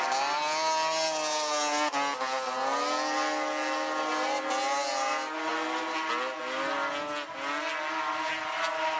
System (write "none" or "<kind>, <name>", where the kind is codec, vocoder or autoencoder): none